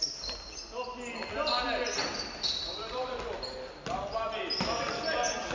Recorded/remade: recorded